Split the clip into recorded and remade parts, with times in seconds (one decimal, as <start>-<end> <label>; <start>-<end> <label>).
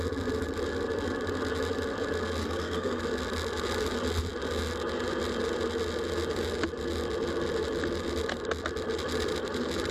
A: 0.0-2.4 recorded; 2.4-3.0 remade; 3.0-9.9 recorded